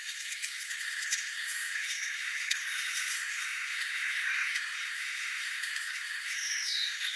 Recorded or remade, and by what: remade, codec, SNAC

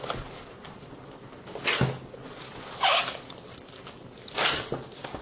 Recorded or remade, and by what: recorded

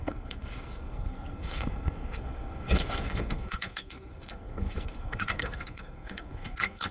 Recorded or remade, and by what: remade, codec, SNAC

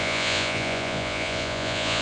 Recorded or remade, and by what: remade, vocoder, Vocos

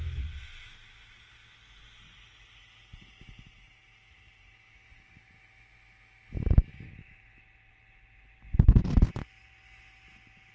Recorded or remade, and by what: recorded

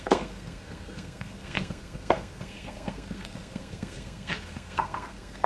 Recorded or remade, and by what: remade, codec, SNAC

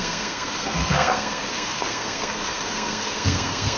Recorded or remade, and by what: remade, codec, SNAC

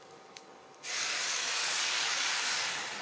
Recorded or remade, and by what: remade, codec, DAC